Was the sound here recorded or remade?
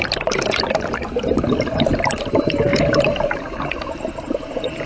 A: remade